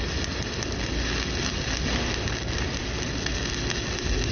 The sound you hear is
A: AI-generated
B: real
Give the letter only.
B